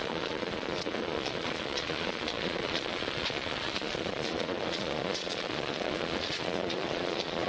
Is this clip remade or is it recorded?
remade